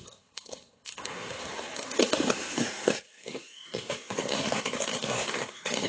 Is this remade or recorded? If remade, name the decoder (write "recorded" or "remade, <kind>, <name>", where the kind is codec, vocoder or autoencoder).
remade, codec, SNAC